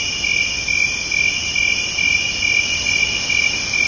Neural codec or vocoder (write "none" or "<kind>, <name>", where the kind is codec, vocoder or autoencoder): none